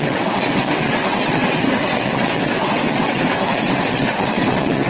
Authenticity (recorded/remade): remade